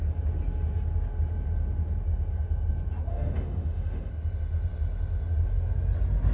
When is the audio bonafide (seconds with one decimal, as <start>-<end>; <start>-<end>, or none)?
0.0-3.1; 4.1-6.3